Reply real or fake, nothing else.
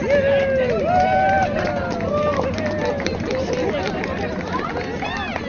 real